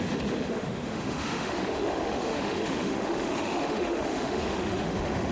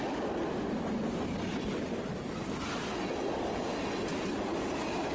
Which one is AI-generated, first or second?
first